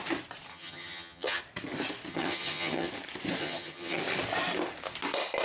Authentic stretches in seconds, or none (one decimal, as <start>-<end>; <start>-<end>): 0.0-0.5; 1.4-2.1; 2.9-3.4; 4.0-5.4